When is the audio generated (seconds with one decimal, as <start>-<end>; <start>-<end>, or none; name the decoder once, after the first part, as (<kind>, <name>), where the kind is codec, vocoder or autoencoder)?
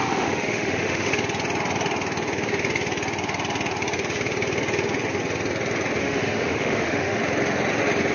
0.0-1.1 (autoencoder, DAC-VAE); 6.0-7.2